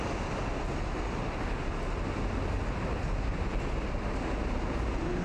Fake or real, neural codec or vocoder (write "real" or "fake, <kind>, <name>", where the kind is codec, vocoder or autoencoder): real